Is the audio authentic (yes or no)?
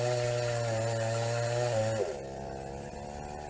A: yes